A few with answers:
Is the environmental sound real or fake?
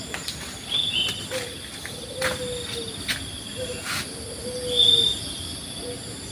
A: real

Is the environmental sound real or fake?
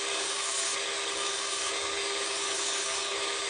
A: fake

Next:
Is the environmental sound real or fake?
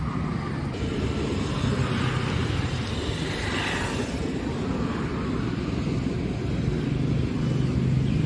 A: real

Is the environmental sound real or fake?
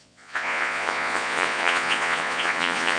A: fake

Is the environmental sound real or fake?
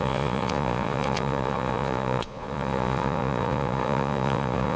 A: fake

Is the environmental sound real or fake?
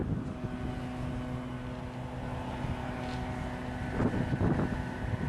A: real